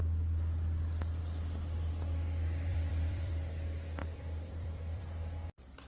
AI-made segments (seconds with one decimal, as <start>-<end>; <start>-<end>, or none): 2.7-3.3; 4.0-5.0